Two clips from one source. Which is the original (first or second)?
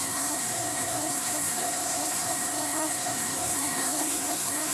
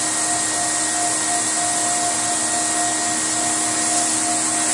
second